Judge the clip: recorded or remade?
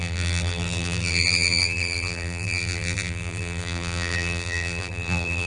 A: remade